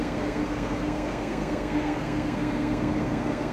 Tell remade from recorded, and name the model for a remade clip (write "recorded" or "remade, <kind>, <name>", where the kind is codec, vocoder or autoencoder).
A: remade, codec, SNAC